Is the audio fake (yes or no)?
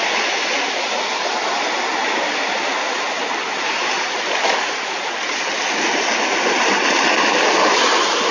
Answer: no